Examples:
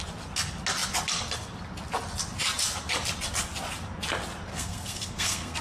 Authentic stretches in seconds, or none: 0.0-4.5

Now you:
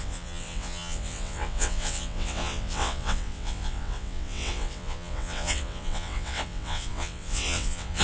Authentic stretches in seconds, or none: none

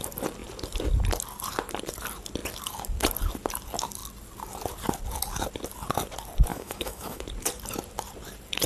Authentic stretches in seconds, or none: 0.0-6.5; 7.2-8.7

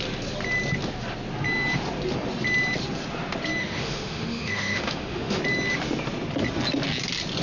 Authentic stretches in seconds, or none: 0.0-3.6; 5.4-7.4

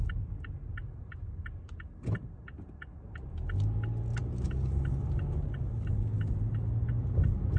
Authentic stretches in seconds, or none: 0.0-7.6